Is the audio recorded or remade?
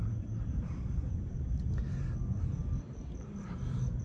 remade